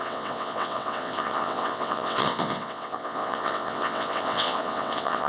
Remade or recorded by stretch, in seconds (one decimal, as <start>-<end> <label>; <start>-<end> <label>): 0.0-5.3 remade